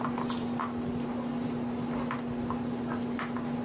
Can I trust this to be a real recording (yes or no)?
yes